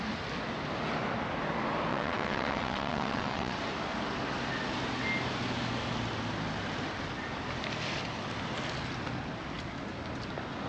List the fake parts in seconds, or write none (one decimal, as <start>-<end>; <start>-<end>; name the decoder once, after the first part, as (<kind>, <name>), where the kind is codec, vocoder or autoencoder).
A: 1.9-3.6 (vocoder, WaveNeXt)